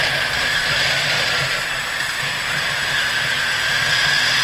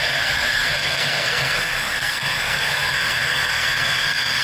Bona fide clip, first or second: first